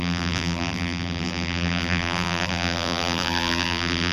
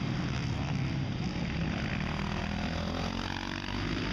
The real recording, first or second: second